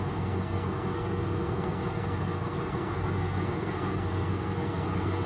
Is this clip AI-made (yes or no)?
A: yes